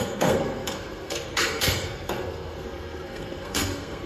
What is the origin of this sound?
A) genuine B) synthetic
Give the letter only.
B